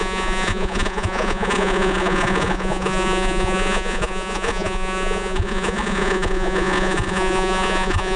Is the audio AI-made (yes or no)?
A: yes